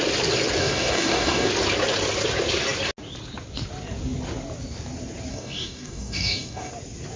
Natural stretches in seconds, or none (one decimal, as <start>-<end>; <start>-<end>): 0.0-0.6; 1.5-5.3; 6.7-7.2